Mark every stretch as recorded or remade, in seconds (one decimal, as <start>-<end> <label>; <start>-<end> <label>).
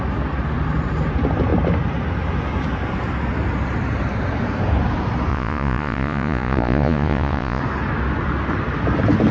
0.0-5.3 recorded; 5.3-7.6 remade; 7.6-9.3 recorded